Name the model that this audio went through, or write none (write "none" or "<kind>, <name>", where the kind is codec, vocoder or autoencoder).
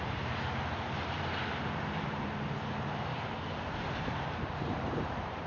vocoder, BigVGAN v2